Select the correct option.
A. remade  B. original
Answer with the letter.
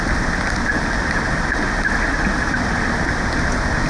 B